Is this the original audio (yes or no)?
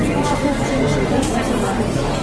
yes